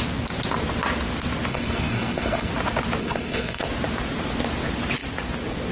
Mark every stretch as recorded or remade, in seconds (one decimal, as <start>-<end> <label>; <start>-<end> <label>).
0.0-1.5 recorded; 1.5-2.5 remade; 2.5-3.0 recorded; 3.0-3.7 remade; 3.7-5.7 recorded